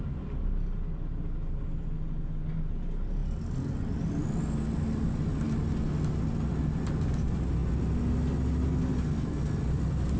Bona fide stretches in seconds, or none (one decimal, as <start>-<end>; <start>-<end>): 0.0-10.2